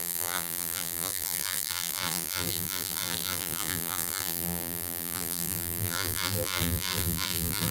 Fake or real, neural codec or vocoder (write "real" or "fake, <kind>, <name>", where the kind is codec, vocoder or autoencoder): fake, vocoder, BigVGAN v2